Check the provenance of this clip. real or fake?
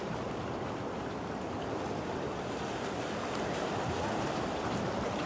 real